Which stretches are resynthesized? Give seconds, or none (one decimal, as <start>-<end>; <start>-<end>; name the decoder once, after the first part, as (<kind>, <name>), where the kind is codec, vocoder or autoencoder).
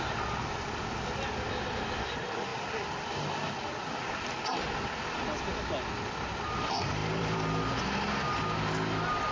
7.0-7.8 (vocoder, BigVGAN v2)